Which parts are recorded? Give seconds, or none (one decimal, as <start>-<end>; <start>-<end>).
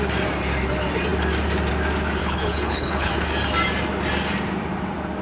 0.0-2.2; 3.1-5.2